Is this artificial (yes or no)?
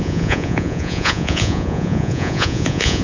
yes